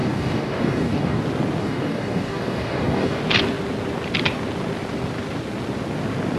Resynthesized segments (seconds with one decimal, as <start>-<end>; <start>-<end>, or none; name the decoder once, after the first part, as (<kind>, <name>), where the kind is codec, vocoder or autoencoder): 0.0-1.2 (codec, DAC); 1.6-3.2